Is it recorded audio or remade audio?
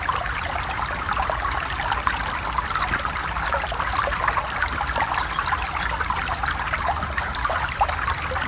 recorded